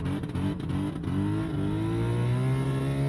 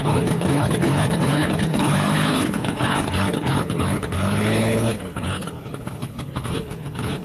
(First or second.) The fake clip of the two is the second